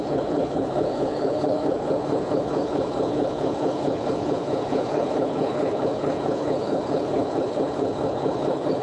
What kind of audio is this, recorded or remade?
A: remade